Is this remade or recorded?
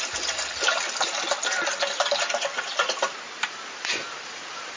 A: remade